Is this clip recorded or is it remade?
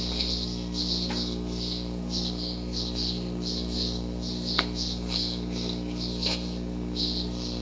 remade